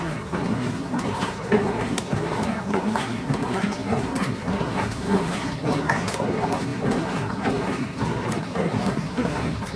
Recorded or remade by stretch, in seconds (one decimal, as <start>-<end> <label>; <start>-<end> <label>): 0.0-9.8 remade